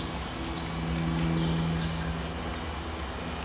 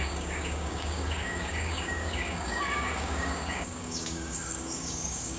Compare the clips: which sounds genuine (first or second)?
first